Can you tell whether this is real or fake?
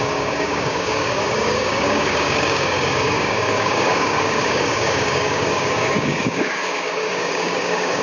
fake